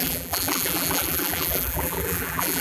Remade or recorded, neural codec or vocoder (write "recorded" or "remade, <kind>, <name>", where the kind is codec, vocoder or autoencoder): remade, vocoder, BigVGAN v2